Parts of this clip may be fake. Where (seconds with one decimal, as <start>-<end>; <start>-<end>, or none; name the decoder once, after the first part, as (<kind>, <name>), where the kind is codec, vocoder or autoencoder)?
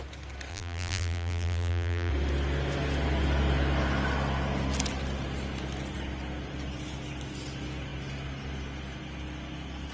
0.5-2.1 (vocoder, BigVGAN v2)